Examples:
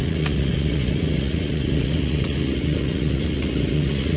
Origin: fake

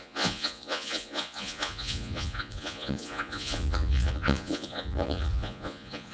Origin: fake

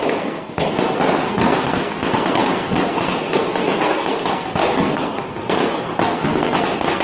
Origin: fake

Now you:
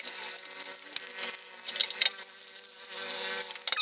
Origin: real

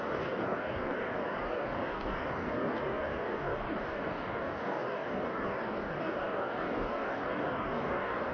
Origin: fake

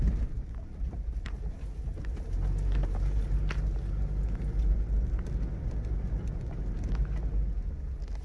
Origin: real